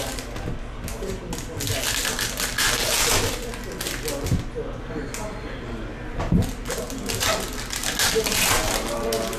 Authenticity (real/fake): real